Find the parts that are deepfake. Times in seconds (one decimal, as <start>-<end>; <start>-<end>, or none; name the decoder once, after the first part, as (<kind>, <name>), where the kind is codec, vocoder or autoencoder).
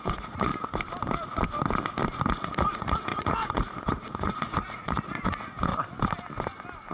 0.0-0.5 (vocoder, Vocos); 2.3-5.7